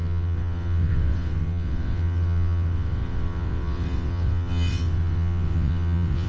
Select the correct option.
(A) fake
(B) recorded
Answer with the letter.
A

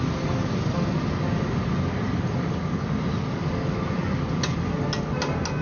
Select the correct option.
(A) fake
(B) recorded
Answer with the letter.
B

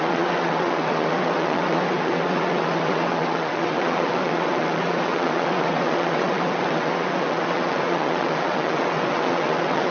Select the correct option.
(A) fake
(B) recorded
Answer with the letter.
A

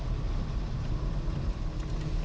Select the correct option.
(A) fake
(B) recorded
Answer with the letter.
B